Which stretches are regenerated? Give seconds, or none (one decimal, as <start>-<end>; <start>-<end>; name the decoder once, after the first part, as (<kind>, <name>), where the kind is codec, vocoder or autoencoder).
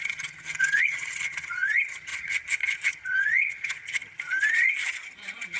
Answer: 0.0-5.6 (vocoder, HiFi-GAN)